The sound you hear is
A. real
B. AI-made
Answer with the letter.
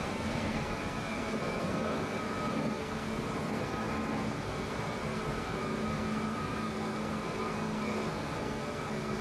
B